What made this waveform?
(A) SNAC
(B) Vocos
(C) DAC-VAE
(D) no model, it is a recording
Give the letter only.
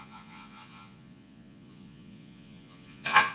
B